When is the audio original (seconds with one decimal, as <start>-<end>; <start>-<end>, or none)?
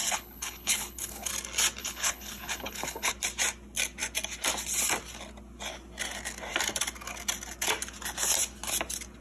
1.3-1.8; 3.1-9.2